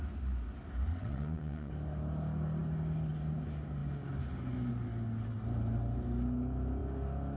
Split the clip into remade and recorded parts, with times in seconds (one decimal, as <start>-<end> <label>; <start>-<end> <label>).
0.0-0.9 recorded; 0.9-1.7 remade; 1.7-7.4 recorded